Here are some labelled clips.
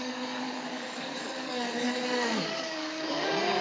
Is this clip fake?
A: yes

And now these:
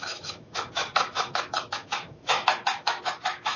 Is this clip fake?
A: yes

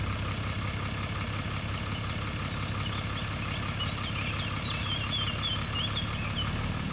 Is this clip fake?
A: no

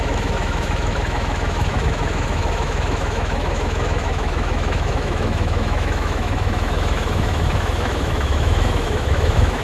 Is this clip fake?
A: yes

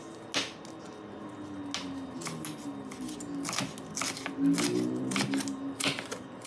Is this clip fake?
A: no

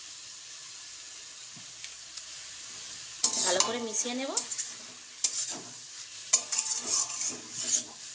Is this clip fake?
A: no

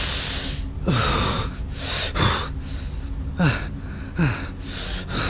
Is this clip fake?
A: no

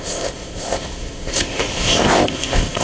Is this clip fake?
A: yes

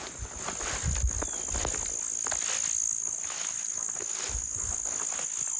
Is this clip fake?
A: no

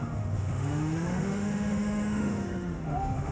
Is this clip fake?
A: yes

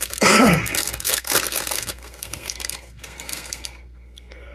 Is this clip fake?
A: yes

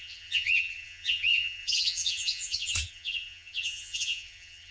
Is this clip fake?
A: yes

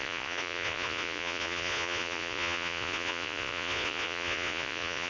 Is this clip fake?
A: yes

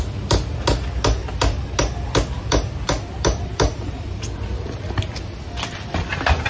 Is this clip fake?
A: no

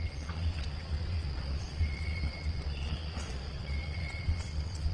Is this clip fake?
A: yes